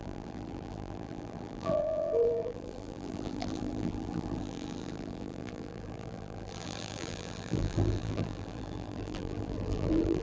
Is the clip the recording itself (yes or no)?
no